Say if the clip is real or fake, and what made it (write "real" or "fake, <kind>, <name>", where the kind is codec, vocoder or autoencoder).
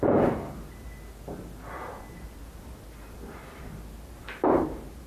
real